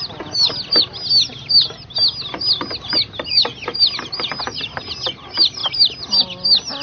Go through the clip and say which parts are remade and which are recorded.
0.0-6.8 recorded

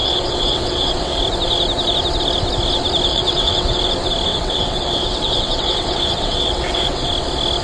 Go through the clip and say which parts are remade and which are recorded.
0.0-1.2 remade; 1.2-3.1 recorded; 3.1-3.8 remade; 3.8-4.3 recorded; 4.3-7.1 remade; 7.1-7.6 recorded

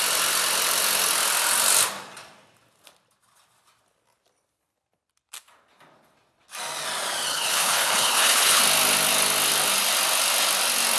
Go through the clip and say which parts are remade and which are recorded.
0.0-7.3 recorded; 7.3-8.6 remade; 8.6-11.0 recorded

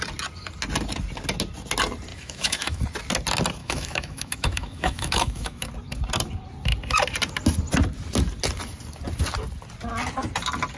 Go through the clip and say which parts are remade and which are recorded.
0.0-2.1 recorded; 2.1-2.8 remade; 2.8-3.6 recorded; 3.6-5.7 remade; 5.7-10.8 recorded

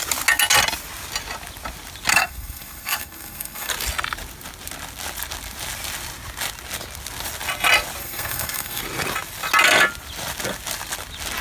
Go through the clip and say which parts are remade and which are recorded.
0.0-2.1 recorded; 2.1-3.7 remade; 3.7-8.0 recorded; 8.0-8.8 remade; 8.8-11.4 recorded

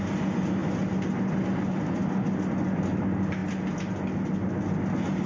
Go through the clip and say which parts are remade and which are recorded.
0.0-5.3 recorded

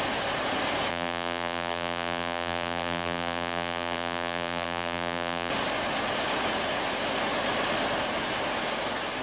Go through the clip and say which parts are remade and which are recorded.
0.0-0.9 recorded; 0.9-5.5 remade; 5.5-9.2 recorded

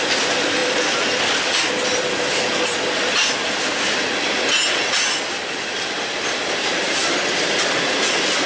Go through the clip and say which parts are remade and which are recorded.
0.0-8.5 recorded